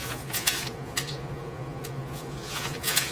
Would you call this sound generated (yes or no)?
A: yes